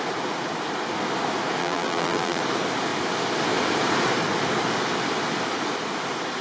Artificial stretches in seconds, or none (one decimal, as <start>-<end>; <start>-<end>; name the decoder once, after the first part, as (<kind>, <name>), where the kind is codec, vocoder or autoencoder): 1.6-2.4 (vocoder, BigVGAN v2)